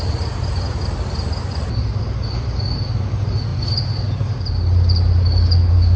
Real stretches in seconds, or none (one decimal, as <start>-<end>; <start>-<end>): 0.0-6.0